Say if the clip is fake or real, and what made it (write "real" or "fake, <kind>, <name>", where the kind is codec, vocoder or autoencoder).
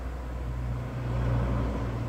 real